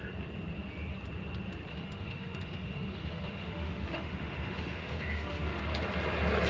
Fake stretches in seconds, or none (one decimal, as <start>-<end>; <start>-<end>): 1.7-5.6